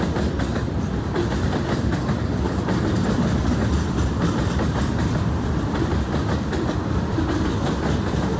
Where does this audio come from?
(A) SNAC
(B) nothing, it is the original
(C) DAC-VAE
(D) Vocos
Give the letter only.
B